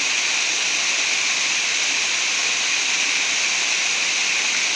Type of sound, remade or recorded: recorded